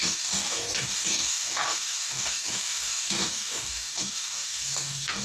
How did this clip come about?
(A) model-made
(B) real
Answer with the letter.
A